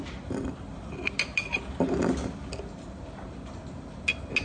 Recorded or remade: recorded